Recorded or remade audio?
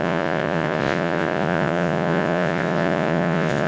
remade